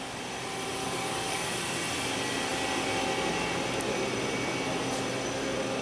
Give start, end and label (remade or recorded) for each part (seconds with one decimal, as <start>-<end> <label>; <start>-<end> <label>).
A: 0.0-0.8 recorded; 0.8-1.5 remade; 1.5-5.8 recorded

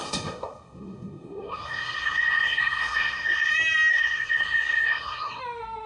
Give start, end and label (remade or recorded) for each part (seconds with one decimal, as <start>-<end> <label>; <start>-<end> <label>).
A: 0.0-3.5 remade; 3.5-3.9 recorded; 3.9-5.4 remade; 5.4-5.9 recorded

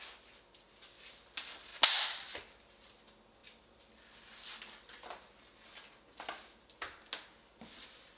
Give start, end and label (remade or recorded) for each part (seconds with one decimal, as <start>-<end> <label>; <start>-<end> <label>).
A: 0.0-8.2 recorded

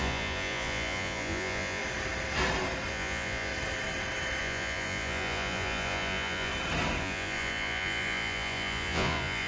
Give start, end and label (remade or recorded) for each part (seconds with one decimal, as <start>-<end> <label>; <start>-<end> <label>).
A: 0.0-1.8 remade; 1.8-2.9 recorded; 2.9-3.5 remade; 3.5-4.4 recorded; 4.4-6.5 remade; 6.5-7.0 recorded; 7.0-9.5 remade

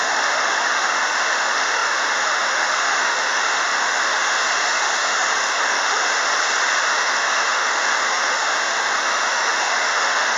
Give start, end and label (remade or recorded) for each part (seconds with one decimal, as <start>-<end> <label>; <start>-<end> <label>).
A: 0.0-6.1 remade; 6.1-6.9 recorded; 6.9-10.4 remade

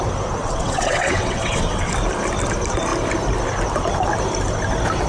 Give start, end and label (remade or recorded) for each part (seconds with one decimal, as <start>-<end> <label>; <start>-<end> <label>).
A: 0.0-0.4 recorded; 0.4-1.9 remade; 1.9-5.1 recorded

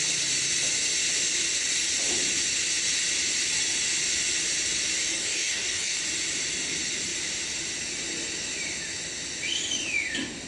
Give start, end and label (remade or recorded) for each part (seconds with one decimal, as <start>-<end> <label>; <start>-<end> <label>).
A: 0.0-5.0 recorded; 5.0-6.0 remade; 6.0-10.5 recorded

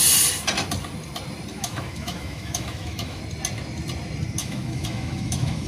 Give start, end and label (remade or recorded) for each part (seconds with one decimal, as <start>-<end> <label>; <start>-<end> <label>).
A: 0.0-1.5 recorded; 1.5-3.2 remade; 3.2-4.4 recorded; 4.4-5.7 remade